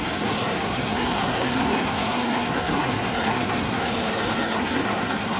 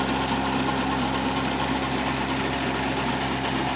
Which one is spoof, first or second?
first